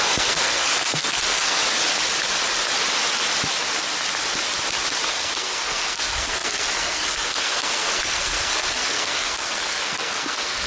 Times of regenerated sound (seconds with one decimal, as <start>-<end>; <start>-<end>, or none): 0.0-1.6; 5.1-10.7